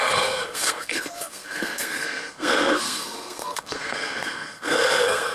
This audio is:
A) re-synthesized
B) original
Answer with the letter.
A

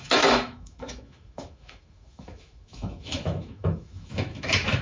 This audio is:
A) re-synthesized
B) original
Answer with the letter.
A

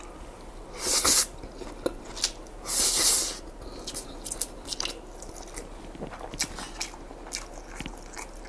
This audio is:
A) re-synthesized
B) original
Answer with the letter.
B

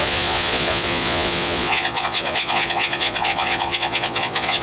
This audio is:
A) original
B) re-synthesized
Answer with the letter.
B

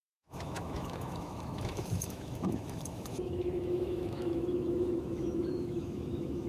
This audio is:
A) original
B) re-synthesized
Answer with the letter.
B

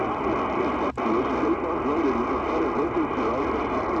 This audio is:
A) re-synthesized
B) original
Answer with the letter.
B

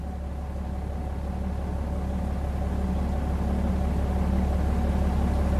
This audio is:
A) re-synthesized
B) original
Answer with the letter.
B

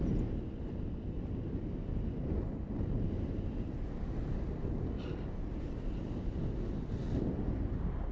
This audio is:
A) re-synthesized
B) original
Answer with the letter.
B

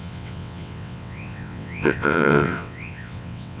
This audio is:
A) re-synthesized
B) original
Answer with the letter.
A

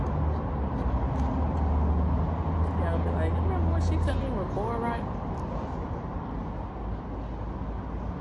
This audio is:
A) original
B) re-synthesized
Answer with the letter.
A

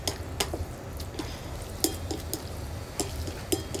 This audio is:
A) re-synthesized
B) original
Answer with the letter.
B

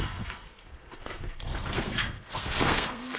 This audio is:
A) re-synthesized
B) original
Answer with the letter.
A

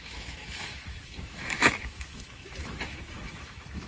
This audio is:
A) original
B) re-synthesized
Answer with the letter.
B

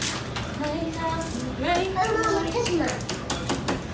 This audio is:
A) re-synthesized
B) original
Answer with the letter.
B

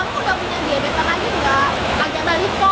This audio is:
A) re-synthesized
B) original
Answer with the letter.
A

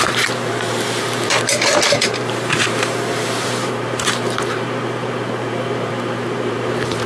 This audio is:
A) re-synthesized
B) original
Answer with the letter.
A